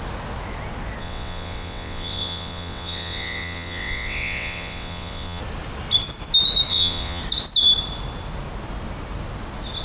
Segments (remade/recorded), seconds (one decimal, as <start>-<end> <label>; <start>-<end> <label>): 0.0-1.0 recorded; 1.0-5.4 remade; 5.4-6.7 recorded; 6.7-7.2 remade; 7.2-9.8 recorded